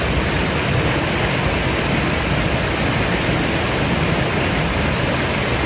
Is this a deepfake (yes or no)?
no